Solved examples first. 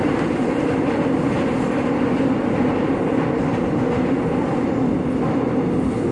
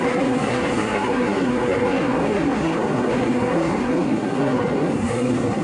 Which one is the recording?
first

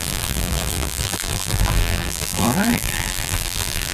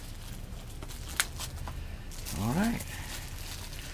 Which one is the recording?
second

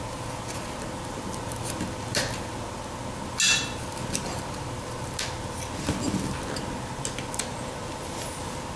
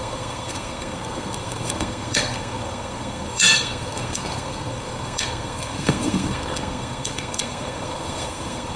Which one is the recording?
first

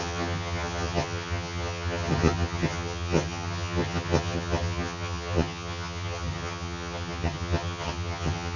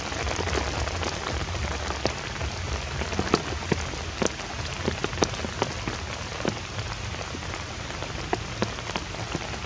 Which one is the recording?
second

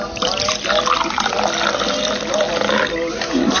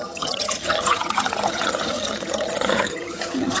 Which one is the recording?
first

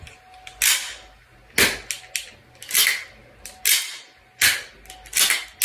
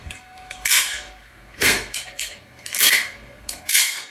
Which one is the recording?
first